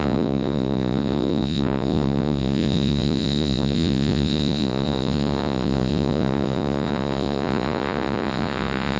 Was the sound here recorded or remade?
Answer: remade